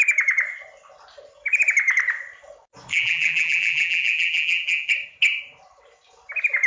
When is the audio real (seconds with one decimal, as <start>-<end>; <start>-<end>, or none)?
0.0-2.9; 4.9-6.7